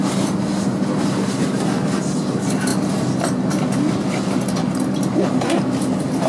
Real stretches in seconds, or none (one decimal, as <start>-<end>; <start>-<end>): 0.0-6.3